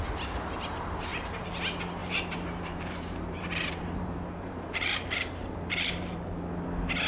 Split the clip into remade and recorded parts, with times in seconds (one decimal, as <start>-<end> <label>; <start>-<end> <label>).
0.0-1.1 recorded; 1.1-1.6 remade; 1.6-2.0 recorded; 2.0-6.3 remade; 6.3-7.1 recorded